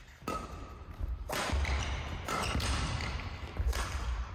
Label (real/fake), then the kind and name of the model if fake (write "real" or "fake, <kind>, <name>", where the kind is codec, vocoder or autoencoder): fake, vocoder, BigVGAN v2